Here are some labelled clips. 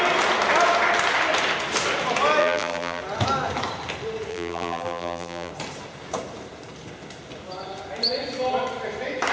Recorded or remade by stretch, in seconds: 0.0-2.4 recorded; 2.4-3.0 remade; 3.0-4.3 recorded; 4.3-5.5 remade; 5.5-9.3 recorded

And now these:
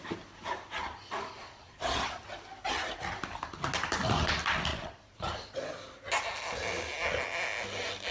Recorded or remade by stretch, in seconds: 0.0-1.0 recorded; 1.0-2.2 remade; 2.2-4.7 recorded; 4.7-5.2 remade; 5.2-8.1 recorded

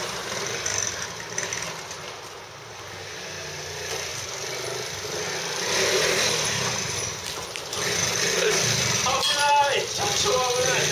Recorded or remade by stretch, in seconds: 0.0-10.9 recorded

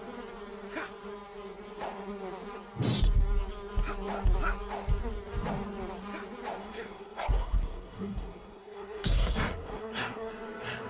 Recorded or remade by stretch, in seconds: 0.0-6.6 recorded; 6.6-10.3 remade; 10.3-10.9 recorded

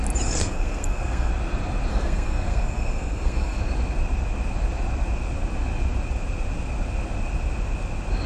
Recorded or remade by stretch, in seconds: 0.0-0.4 recorded; 0.4-1.3 remade; 1.3-1.9 recorded; 1.9-3.6 remade; 3.6-8.3 recorded

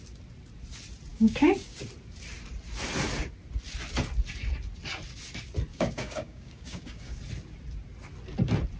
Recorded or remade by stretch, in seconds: 0.0-1.1 recorded; 1.1-1.8 remade; 1.8-5.7 recorded; 5.7-7.2 remade; 7.2-8.8 recorded

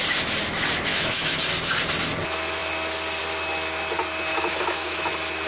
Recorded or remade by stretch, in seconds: 0.0-0.9 recorded; 0.9-1.4 remade; 1.4-4.3 recorded; 4.3-5.1 remade; 5.1-5.5 recorded

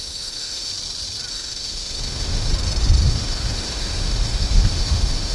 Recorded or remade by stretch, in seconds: 0.0-0.7 remade; 0.7-1.3 recorded; 1.3-2.5 remade; 2.5-3.1 recorded; 3.1-5.3 remade